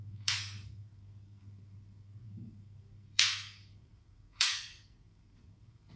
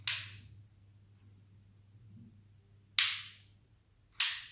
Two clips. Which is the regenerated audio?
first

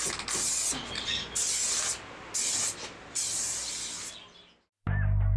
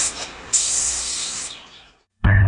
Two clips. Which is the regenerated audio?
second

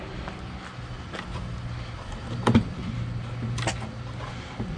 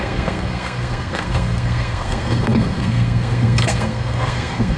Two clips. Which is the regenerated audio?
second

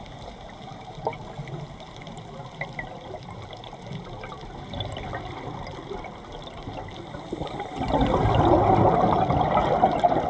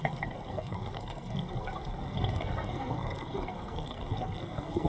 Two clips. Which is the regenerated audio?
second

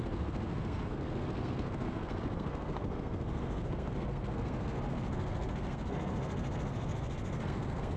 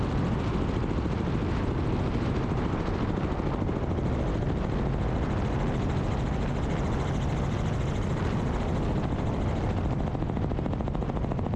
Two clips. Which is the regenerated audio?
first